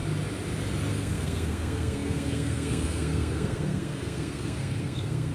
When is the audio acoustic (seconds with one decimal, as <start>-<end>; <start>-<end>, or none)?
0.0-0.9